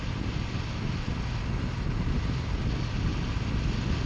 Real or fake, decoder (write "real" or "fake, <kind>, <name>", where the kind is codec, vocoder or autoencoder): real